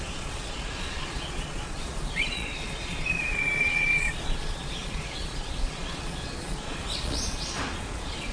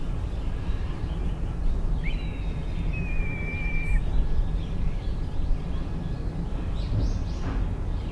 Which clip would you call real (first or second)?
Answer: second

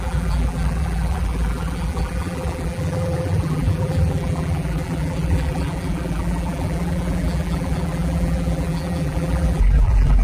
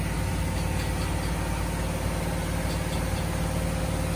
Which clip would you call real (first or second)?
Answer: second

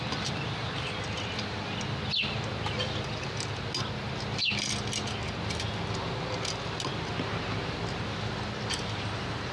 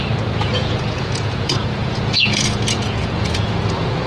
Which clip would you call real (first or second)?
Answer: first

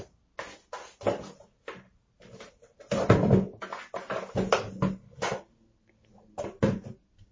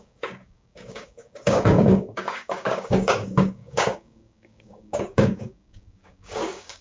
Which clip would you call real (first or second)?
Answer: first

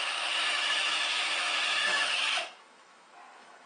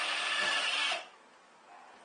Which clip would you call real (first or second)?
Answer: second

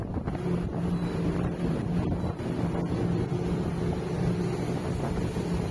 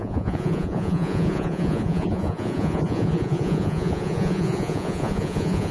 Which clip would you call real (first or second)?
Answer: first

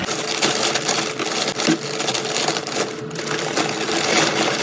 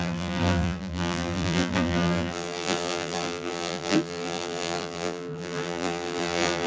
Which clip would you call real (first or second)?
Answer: first